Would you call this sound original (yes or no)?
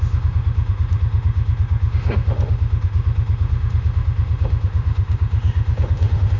no